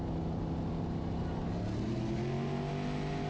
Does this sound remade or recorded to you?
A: recorded